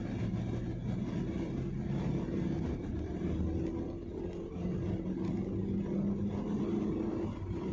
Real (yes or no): yes